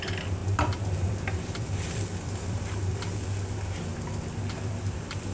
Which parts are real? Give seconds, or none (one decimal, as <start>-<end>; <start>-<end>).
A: 3.9-4.5